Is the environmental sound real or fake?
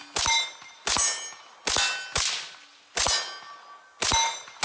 real